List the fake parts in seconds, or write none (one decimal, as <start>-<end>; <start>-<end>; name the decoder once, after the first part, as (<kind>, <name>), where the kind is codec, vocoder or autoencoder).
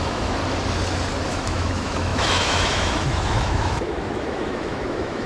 0.0-0.4 (autoencoder, DAC-VAE); 1.3-5.3